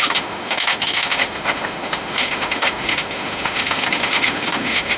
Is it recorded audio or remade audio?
remade